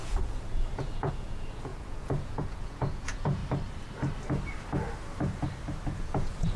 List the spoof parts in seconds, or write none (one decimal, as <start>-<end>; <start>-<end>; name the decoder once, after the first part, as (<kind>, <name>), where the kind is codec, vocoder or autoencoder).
0.0-3.4 (vocoder, Vocos); 5.8-6.6